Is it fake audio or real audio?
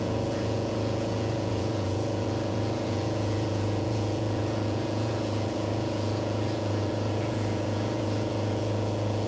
fake